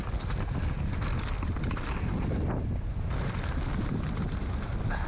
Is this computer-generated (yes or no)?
no